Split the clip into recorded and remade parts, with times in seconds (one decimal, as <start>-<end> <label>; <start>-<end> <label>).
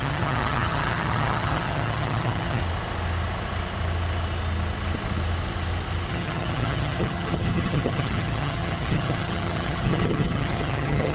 0.0-2.6 remade; 2.6-6.1 recorded; 6.1-11.1 remade